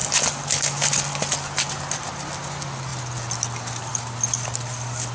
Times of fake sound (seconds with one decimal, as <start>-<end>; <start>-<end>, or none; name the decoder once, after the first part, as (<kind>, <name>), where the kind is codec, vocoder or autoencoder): none